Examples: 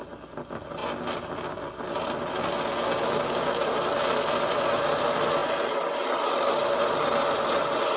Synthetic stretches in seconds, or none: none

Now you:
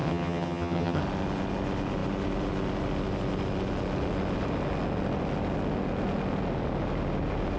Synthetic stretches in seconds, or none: 0.0-1.0 (vocoder, HiFi-GAN)

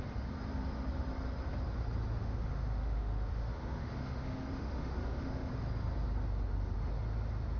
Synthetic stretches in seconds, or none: 2.2-5.5 (autoencoder, DAC-VAE)

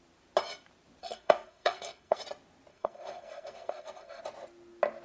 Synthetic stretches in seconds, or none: 1.0-2.2 (codec, SNAC); 2.7-4.2

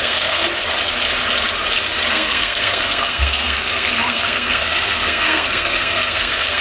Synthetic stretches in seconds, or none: 0.0-0.4 (codec, SNAC); 2.1-6.6